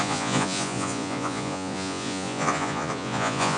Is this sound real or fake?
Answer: fake